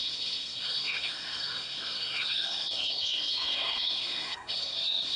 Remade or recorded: remade